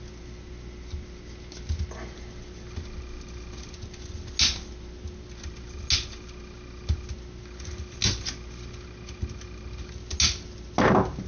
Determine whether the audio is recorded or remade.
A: recorded